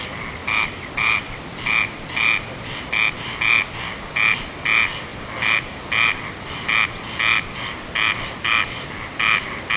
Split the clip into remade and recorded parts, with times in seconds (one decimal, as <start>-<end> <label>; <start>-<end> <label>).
0.0-9.8 recorded